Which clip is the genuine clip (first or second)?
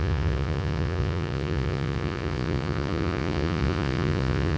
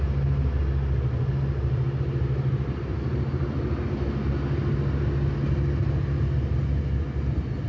second